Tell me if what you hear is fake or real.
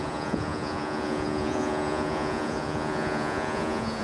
fake